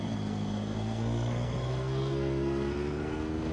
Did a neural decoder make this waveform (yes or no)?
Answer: yes